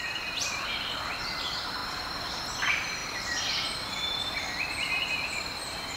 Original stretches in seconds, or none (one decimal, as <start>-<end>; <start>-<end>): none